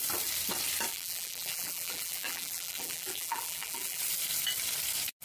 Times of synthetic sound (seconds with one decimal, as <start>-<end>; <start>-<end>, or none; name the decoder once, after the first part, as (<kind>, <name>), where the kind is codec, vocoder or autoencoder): 0.9-4.0 (vocoder, BigVGAN v2)